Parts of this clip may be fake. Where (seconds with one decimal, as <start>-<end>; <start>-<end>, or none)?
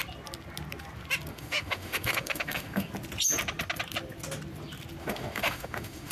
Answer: 1.3-2.9; 5.0-6.1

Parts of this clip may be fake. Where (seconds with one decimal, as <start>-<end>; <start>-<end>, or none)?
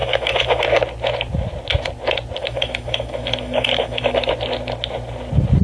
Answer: 0.0-0.6; 2.4-4.3